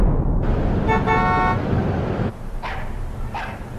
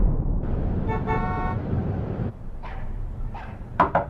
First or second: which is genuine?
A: first